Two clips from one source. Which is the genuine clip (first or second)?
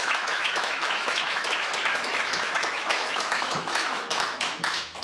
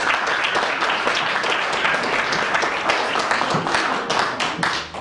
second